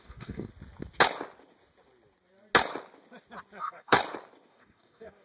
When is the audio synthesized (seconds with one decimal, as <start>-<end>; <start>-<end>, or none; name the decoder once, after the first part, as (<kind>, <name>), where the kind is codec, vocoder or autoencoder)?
0.0-0.5 (codec, DAC); 3.6-4.0; 4.5-5.2